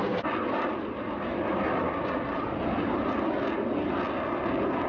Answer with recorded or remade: recorded